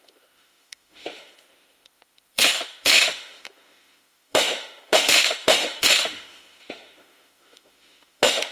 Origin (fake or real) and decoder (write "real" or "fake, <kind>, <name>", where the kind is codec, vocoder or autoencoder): fake, autoencoder, DAC-VAE